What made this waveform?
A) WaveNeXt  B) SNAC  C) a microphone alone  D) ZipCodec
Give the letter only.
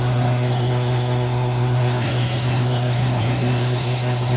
B